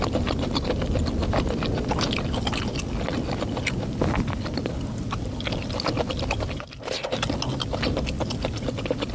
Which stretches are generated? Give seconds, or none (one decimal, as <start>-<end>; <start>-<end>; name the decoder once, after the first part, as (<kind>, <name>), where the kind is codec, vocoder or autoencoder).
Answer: none